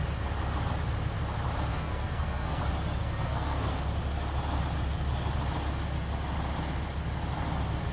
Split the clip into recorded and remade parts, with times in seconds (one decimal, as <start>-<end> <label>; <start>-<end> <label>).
0.0-1.7 recorded; 1.7-2.6 remade; 2.6-3.0 recorded; 3.0-3.8 remade; 3.8-7.9 recorded